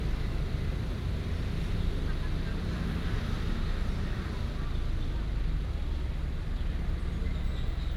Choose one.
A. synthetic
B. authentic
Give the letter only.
B